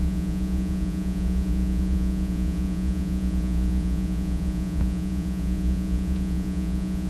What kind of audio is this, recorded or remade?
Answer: remade